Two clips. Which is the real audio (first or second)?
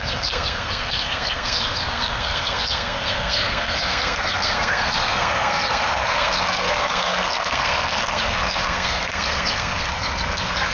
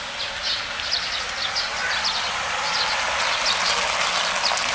second